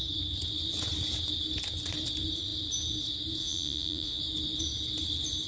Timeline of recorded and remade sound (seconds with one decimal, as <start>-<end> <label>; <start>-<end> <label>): 0.0-3.4 recorded; 3.4-4.2 remade; 4.2-5.5 recorded